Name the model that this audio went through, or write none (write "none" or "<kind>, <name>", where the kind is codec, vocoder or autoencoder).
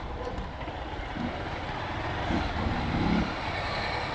none